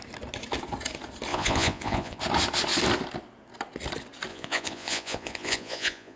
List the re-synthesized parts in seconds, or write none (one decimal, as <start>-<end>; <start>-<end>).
1.3-2.2; 4.3-6.2